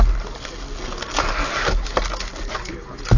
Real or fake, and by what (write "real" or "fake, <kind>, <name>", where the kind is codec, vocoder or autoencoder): real